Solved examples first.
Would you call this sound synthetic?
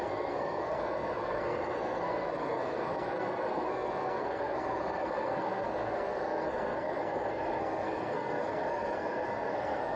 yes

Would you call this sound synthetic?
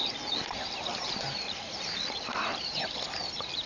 yes